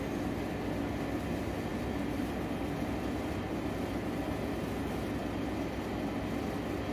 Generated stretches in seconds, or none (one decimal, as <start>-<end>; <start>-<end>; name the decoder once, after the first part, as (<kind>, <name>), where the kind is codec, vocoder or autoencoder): none